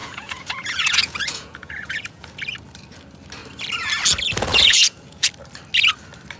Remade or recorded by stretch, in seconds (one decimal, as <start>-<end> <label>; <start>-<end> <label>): 0.0-2.3 remade; 2.3-4.5 recorded; 4.5-5.3 remade; 5.3-6.4 recorded